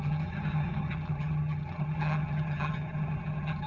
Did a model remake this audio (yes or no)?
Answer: yes